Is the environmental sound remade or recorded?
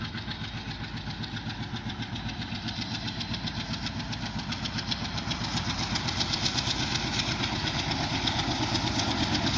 recorded